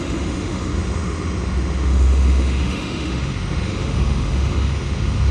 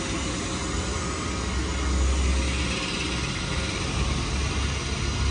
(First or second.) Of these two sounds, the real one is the second